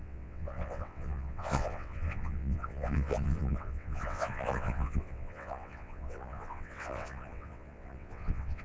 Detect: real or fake fake